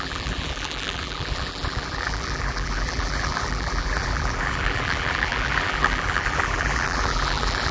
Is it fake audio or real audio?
fake